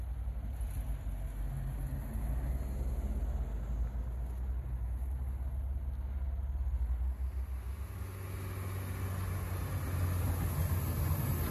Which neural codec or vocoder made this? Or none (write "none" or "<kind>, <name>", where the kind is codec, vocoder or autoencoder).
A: none